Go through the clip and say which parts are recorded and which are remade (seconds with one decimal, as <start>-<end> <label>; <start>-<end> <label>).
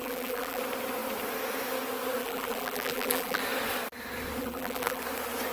0.0-0.6 remade; 0.6-2.2 recorded; 2.2-3.4 remade; 3.4-4.4 recorded; 4.4-5.0 remade; 5.0-5.5 recorded